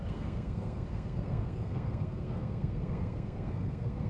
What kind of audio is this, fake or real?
fake